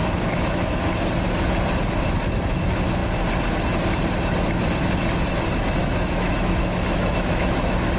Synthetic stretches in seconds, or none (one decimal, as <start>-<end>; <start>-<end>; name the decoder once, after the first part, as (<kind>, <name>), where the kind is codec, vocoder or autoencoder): 0.0-0.8 (autoencoder, DAC-VAE); 5.8-8.0